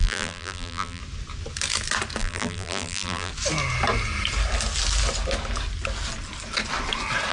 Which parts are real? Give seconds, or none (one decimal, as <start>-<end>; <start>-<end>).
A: 1.0-2.2; 3.3-7.3